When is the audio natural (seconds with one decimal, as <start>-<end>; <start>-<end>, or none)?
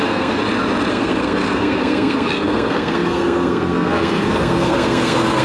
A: 0.4-0.9